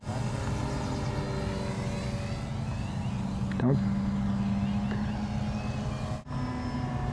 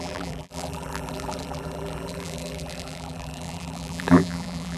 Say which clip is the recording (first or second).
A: first